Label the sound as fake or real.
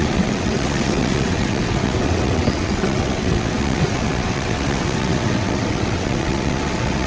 fake